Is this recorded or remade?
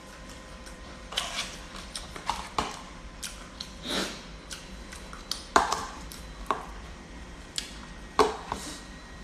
remade